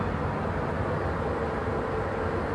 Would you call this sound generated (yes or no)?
no